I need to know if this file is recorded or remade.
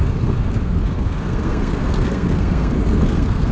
remade